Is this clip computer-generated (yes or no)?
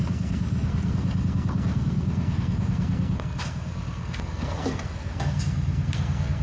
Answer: yes